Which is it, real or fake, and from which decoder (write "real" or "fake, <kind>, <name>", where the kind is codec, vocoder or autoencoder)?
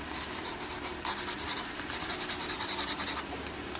real